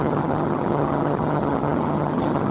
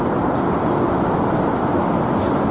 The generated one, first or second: first